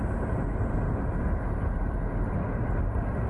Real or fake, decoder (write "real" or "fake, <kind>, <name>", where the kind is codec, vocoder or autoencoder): real